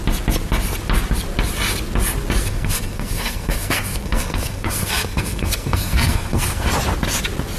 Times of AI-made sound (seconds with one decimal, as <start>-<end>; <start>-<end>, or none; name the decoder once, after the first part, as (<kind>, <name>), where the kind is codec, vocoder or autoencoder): 2.4-6.7 (codec, SNAC)